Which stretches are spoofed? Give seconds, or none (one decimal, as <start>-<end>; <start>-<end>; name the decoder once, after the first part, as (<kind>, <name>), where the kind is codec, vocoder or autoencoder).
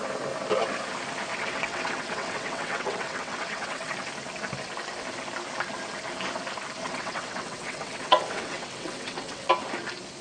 1.3-3.9 (vocoder, WaveNeXt); 6.8-9.5